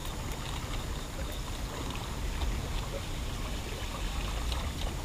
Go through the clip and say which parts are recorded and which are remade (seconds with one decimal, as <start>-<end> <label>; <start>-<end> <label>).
0.0-0.8 remade; 0.8-5.0 recorded